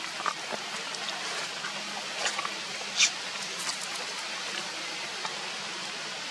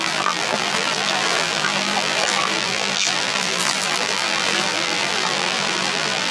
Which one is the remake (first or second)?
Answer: second